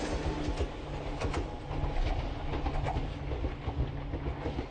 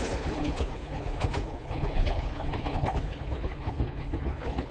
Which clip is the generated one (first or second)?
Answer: second